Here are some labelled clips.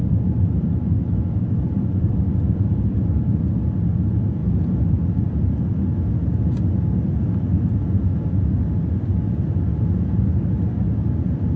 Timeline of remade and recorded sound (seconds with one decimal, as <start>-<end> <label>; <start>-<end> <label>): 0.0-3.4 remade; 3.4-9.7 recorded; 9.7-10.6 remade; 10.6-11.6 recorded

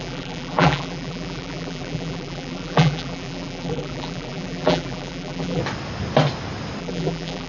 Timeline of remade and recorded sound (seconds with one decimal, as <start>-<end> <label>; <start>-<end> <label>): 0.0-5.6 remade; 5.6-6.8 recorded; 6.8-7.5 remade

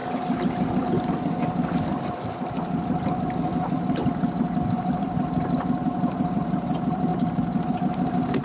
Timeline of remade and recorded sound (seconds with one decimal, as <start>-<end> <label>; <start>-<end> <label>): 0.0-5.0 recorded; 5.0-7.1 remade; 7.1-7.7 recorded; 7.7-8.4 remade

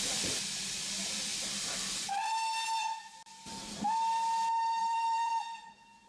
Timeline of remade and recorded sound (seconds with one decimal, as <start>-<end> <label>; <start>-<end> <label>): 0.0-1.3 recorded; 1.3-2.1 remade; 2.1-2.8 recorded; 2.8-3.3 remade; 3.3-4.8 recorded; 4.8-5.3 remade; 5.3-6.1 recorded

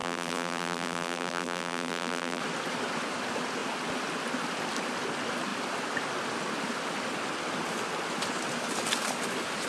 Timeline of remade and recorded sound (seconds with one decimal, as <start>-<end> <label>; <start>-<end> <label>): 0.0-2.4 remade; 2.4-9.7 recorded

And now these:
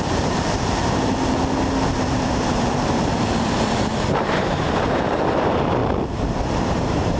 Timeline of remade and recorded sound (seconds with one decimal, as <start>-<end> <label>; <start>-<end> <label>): 0.0-0.8 remade; 0.8-1.9 recorded; 1.9-5.8 remade; 5.8-6.5 recorded; 6.5-7.2 remade

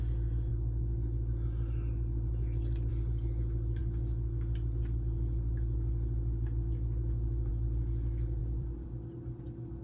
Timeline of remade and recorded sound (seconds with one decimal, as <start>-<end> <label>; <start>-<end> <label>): 0.0-3.8 recorded; 3.8-7.5 remade; 7.5-8.4 recorded; 8.4-9.4 remade; 9.4-9.8 recorded